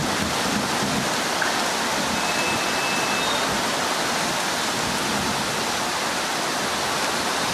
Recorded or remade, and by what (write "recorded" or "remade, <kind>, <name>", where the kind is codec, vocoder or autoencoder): recorded